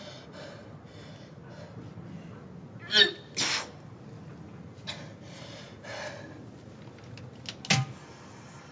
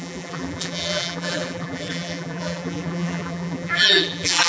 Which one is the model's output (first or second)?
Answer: second